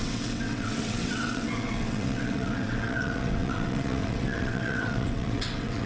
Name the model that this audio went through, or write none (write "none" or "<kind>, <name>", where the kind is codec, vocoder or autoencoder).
vocoder, WaveNeXt